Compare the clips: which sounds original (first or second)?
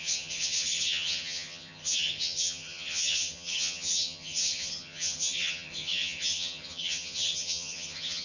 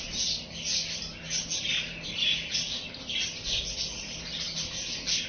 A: second